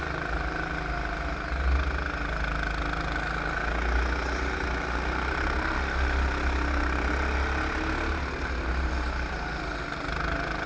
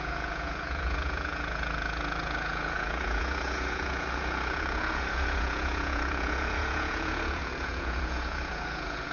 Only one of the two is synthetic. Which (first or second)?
second